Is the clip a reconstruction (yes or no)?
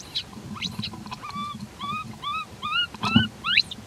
no